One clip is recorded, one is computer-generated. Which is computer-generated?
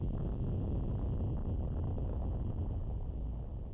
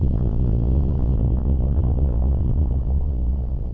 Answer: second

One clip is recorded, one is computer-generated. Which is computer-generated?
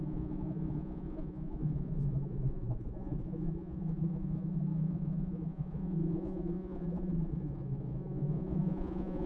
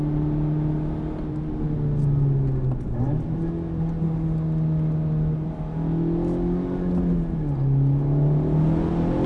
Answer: first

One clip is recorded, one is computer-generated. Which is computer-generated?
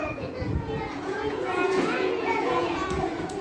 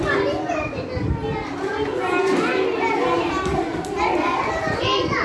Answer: first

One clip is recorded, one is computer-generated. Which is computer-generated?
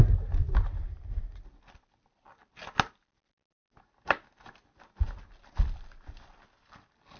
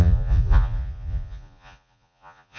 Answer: second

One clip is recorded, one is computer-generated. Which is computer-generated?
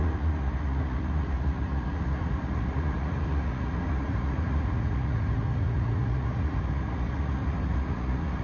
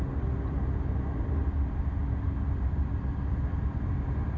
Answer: first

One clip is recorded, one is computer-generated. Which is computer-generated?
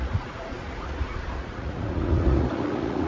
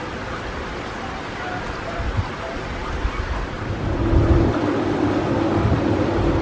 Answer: first